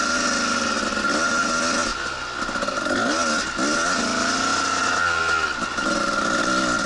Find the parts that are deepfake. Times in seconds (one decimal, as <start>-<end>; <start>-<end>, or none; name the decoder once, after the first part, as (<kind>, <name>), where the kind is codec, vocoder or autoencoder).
none